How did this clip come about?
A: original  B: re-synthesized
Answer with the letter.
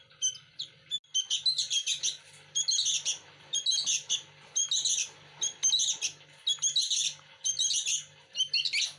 A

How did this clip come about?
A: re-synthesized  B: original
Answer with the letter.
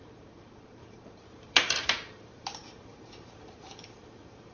A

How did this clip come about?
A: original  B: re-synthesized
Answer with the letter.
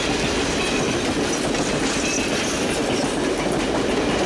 A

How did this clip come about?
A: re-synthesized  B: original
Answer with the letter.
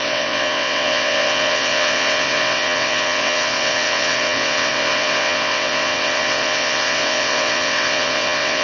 A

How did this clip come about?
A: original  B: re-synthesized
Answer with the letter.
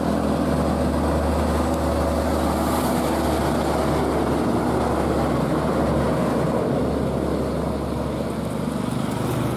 A